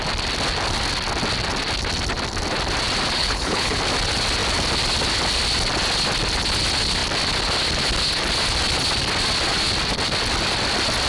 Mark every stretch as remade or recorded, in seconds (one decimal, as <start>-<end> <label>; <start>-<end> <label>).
0.0-3.2 recorded; 3.2-3.8 remade; 3.8-11.1 recorded